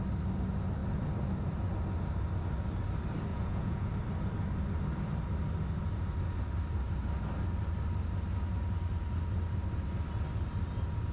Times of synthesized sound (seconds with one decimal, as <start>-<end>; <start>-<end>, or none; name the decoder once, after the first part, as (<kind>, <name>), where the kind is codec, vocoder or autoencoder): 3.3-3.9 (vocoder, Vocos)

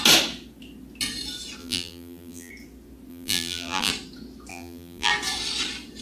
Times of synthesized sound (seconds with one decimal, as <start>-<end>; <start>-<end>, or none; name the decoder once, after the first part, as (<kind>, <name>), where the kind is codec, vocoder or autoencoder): 1.6-2.5 (vocoder, BigVGAN v2); 3.1-3.9; 4.5-5.1

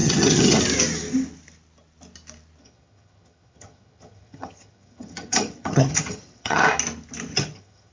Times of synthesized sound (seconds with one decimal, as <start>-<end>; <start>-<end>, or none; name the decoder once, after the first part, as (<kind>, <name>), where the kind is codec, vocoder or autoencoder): 0.0-0.6 (vocoder, HiFi-GAN); 2.6-6.6; 7.3-7.9